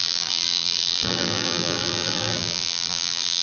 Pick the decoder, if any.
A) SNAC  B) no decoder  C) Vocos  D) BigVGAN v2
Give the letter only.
D